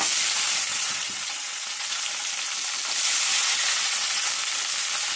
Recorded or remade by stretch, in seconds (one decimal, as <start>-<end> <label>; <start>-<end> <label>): 0.0-0.7 recorded; 0.7-2.0 remade; 2.0-3.3 recorded; 3.3-4.3 remade; 4.3-5.2 recorded